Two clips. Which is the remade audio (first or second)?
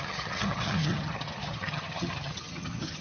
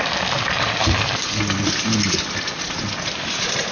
first